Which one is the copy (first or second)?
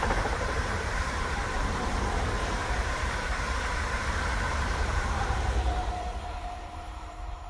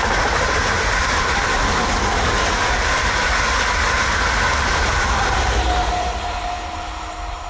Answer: first